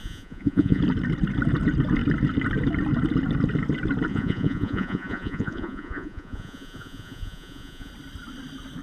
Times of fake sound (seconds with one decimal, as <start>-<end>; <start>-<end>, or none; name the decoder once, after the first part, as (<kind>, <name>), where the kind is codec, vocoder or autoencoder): 0.0-0.8 (vocoder, Vocos); 4.1-7.9